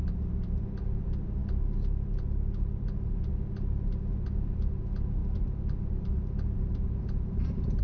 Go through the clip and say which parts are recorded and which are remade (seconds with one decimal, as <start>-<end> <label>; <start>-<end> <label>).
0.0-5.2 recorded; 5.2-7.8 remade